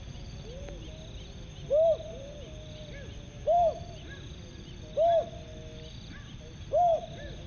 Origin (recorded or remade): recorded